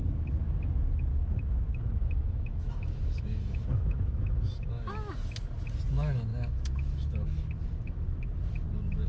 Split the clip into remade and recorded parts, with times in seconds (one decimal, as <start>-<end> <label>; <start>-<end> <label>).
0.0-1.1 recorded; 1.1-4.9 remade; 4.9-6.3 recorded; 6.3-8.4 remade; 8.4-9.1 recorded